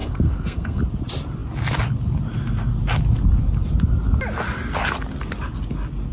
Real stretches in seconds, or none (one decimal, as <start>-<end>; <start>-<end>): 0.8-6.1